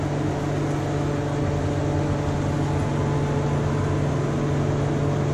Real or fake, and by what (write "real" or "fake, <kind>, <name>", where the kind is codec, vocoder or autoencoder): real